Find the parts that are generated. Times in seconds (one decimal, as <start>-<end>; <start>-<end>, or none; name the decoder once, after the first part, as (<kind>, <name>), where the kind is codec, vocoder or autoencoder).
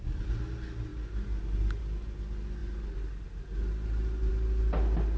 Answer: none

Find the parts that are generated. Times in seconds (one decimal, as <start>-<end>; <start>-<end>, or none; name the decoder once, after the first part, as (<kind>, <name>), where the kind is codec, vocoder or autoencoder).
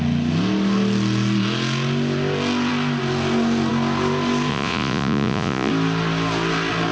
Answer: 4.5-5.7 (vocoder, Vocos)